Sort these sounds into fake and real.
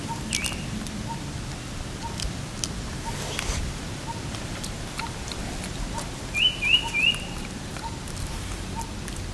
real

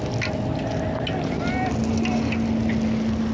real